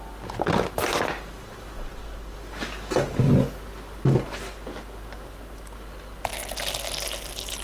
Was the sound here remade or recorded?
recorded